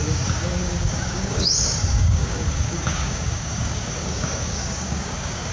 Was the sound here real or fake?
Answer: fake